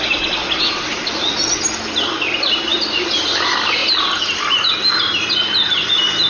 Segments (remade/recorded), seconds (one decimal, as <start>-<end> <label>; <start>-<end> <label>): 0.0-6.3 recorded